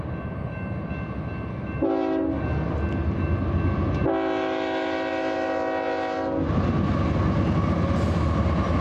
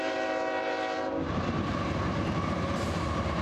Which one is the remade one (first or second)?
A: second